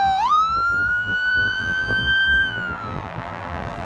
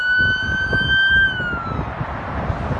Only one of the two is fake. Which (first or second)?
first